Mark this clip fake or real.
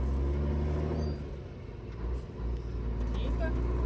real